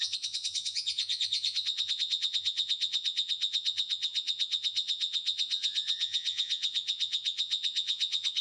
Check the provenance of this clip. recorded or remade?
remade